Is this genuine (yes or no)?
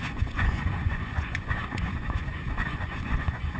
no